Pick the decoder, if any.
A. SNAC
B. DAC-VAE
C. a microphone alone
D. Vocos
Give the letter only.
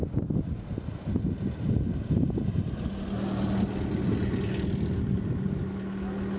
C